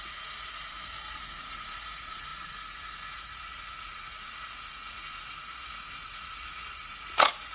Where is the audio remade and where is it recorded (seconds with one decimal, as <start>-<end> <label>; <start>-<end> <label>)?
0.0-7.5 remade